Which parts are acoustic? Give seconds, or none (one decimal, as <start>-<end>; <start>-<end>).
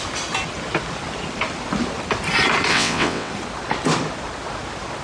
0.0-2.7; 3.3-5.0